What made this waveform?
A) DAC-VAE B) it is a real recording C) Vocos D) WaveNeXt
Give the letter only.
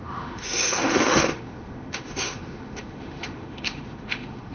A